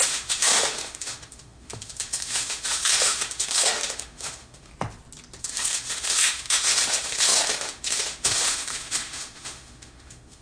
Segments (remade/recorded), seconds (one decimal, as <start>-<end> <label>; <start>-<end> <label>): 0.0-4.7 remade; 4.7-5.4 recorded; 5.4-10.4 remade